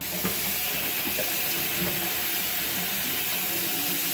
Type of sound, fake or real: real